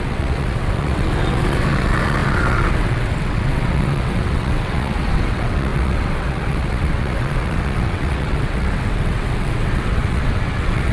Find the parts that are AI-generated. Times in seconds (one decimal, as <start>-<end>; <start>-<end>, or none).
0.0-10.9